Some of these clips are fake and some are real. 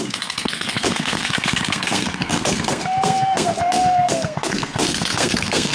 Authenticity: fake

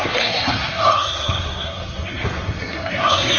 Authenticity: fake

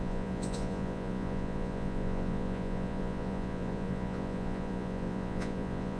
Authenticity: fake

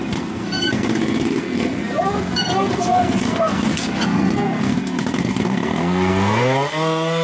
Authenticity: fake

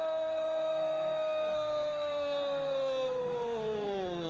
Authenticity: fake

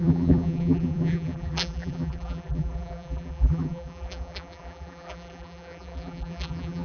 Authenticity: fake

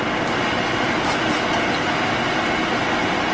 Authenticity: real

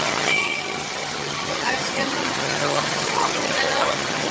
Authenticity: fake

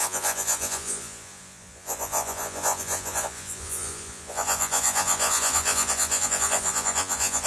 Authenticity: fake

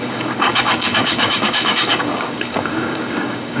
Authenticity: fake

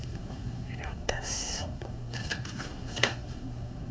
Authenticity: fake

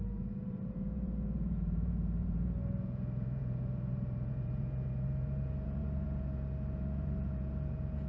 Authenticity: fake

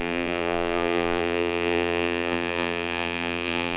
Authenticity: fake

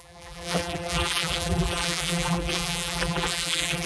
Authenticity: fake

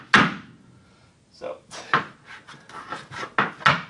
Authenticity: real